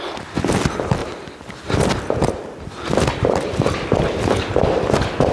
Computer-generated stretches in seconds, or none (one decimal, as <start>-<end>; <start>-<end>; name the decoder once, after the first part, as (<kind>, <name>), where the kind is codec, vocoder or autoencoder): none